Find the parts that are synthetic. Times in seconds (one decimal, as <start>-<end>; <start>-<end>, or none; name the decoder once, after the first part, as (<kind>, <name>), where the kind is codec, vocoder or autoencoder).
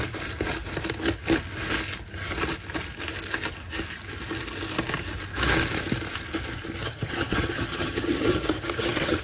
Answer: 6.8-9.2 (vocoder, HiFi-GAN)